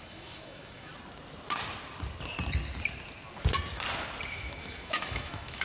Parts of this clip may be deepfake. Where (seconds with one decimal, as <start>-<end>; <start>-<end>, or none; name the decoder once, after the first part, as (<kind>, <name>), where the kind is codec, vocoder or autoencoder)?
0.0-0.9 (autoencoder, DAC-VAE); 4.3-5.6